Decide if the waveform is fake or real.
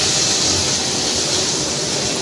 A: real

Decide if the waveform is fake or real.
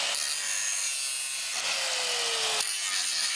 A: real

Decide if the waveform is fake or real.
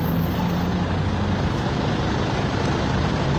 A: real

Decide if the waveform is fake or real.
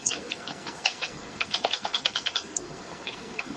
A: fake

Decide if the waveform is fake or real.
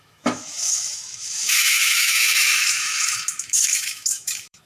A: fake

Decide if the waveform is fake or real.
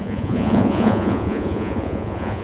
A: fake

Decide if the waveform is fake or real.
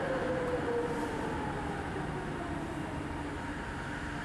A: real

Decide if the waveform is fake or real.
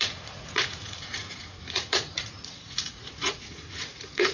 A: fake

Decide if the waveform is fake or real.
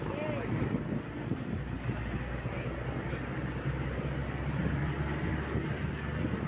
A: real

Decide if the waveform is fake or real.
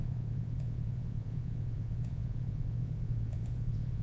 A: fake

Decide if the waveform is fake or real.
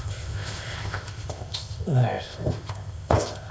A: fake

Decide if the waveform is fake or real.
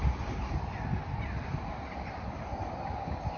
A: real